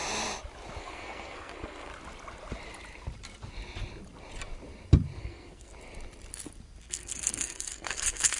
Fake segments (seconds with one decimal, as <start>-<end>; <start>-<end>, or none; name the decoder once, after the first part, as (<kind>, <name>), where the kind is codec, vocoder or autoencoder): 0.8-1.9 (codec, SNAC); 5.2-5.7; 6.9-8.4